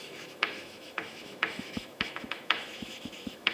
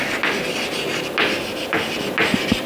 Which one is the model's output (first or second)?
first